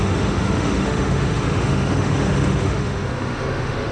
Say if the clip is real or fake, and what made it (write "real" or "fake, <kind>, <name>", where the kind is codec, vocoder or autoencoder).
fake, autoencoder, DAC-VAE